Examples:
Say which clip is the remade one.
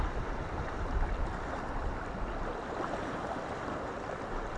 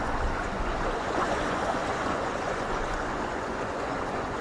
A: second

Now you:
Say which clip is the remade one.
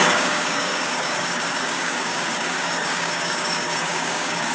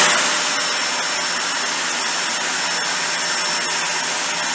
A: first